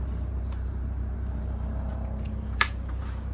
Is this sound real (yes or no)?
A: no